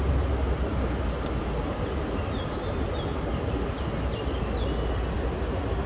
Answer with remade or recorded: recorded